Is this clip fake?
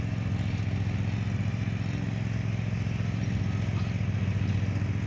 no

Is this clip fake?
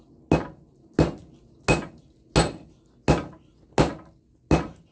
no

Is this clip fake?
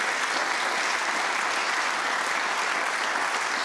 no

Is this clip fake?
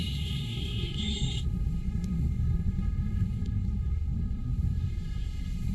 yes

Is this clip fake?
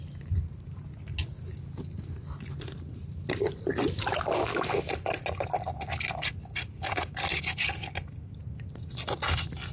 no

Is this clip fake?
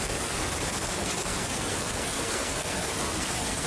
yes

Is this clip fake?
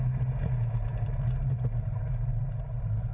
no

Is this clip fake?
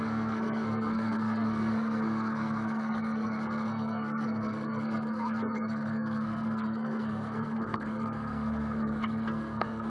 yes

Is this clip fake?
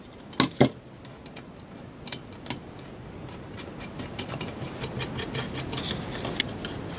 no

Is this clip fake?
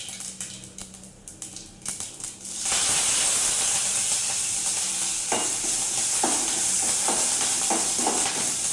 no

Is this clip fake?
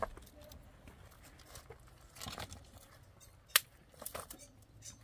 no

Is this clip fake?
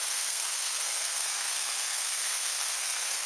yes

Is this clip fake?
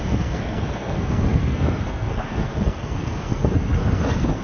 yes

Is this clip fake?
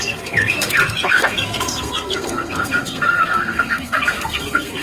yes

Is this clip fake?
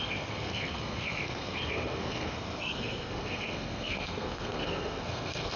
yes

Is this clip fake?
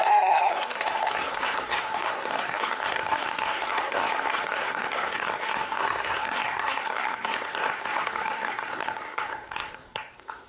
yes